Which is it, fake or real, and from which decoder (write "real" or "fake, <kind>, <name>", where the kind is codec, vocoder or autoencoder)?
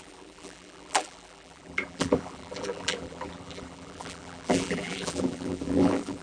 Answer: fake, vocoder, BigVGAN v2